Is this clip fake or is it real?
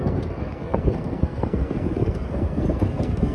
fake